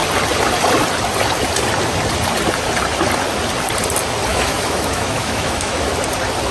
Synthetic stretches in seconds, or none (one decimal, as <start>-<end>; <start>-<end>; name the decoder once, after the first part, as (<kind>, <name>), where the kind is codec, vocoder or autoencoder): 4.3-5.9 (autoencoder, DAC-VAE)